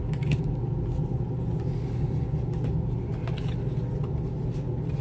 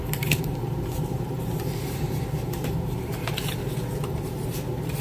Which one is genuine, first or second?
first